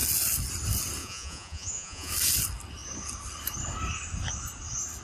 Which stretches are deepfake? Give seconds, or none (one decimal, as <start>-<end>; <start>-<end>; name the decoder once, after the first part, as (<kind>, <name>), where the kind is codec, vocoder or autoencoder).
1.0-2.1 (vocoder, Vocos)